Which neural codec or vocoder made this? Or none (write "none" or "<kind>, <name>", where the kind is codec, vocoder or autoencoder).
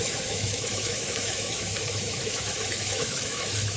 autoencoder, DAC-VAE